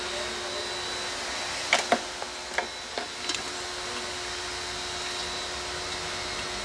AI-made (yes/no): no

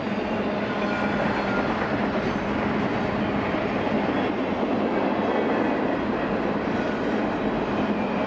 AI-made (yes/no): no